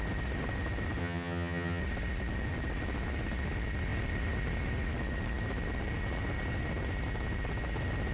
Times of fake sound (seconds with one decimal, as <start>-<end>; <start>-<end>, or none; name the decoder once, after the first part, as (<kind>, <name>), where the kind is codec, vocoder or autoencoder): 1.0-1.8 (vocoder, HiFi-GAN)